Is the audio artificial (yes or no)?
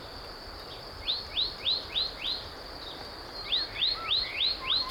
no